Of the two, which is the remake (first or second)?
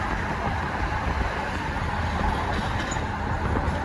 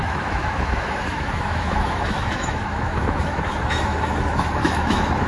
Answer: second